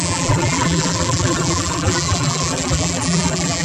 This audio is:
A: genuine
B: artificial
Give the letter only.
B